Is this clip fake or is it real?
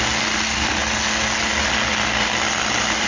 real